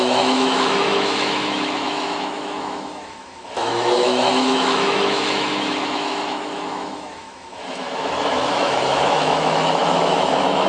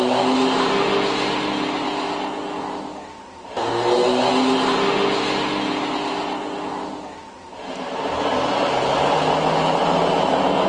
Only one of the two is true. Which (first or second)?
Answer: second